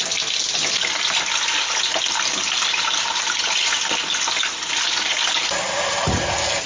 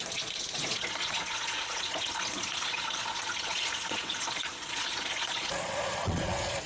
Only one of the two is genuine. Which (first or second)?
first